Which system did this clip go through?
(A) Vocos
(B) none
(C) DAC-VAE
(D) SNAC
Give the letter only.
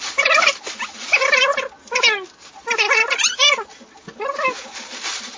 B